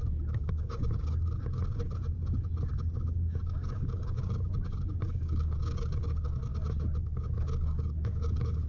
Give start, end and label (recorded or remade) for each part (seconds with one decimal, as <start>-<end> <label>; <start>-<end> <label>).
0.0-1.6 remade; 1.6-3.3 recorded; 3.3-6.5 remade; 6.5-7.0 recorded; 7.0-8.7 remade